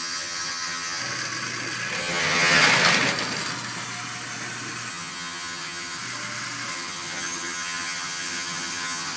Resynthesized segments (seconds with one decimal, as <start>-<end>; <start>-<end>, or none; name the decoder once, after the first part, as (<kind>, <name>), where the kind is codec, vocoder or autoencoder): 0.0-1.0 (vocoder, HiFi-GAN); 2.0-2.6; 4.9-6.0; 6.7-9.2